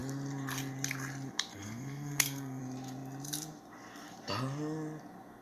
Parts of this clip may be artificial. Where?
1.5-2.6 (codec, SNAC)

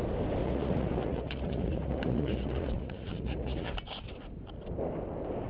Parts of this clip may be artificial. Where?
0.4-3.7 (vocoder, Vocos)

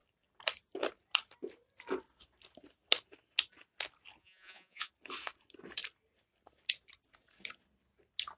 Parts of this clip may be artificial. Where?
4.2-4.9 (vocoder, Vocos)

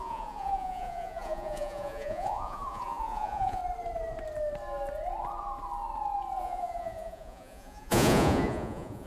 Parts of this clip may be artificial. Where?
0.0-3.6 (vocoder, Vocos); 6.4-9.1